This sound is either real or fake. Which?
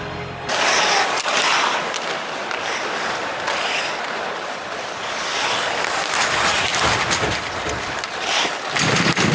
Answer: real